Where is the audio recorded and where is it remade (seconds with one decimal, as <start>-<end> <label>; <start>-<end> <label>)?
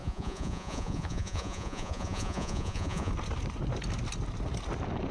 0.0-3.1 remade; 3.1-5.1 recorded